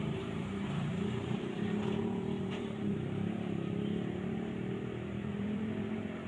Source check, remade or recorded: remade